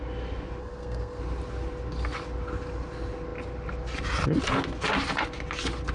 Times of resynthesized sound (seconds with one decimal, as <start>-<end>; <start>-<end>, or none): 0.6-1.2